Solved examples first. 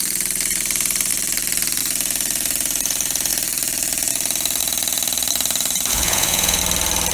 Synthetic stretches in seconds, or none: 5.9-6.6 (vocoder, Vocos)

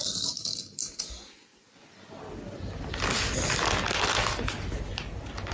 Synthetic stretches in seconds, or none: none

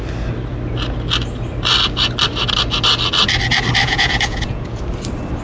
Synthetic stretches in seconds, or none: 3.8-4.8 (vocoder, Vocos)